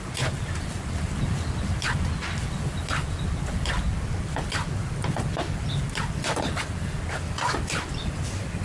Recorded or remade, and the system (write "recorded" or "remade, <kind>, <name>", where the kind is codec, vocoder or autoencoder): recorded